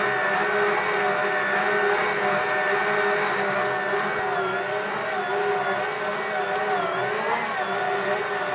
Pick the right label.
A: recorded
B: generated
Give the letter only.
A